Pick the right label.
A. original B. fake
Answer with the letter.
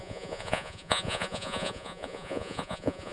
B